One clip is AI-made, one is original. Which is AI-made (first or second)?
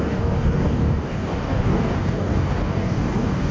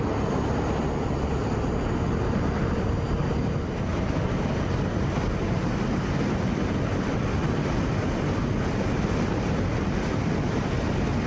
first